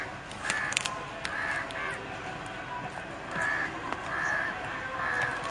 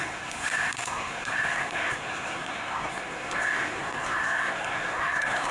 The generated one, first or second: second